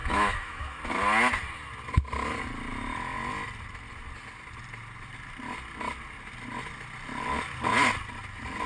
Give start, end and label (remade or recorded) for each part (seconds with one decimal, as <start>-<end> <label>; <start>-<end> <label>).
0.0-0.8 remade; 0.8-8.7 recorded